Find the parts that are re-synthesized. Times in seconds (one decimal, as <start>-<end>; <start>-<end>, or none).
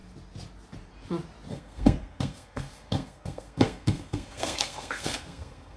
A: 1.5-5.8